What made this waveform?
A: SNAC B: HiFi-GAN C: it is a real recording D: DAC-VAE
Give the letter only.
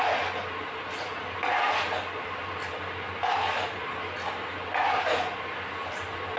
C